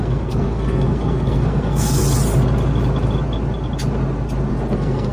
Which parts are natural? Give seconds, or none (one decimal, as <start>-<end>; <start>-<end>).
2.0-4.5